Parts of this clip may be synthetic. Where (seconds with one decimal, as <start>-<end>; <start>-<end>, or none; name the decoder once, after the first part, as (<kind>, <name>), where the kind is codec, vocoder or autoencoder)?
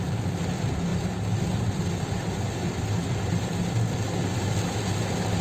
none